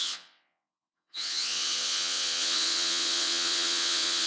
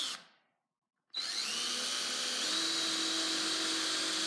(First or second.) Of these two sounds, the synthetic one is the first